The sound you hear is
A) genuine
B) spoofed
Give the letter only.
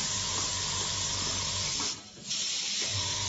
B